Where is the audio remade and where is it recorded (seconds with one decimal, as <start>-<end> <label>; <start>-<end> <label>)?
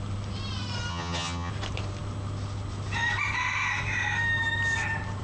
0.0-0.9 recorded; 0.9-1.5 remade; 1.5-5.2 recorded